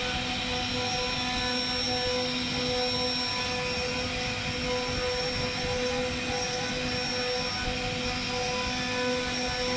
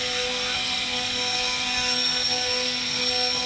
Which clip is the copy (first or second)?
second